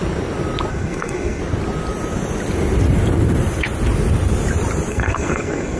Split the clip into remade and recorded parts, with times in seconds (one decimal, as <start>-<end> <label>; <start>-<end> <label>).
0.0-0.7 recorded; 0.7-1.4 remade; 1.4-4.9 recorded; 4.9-5.8 remade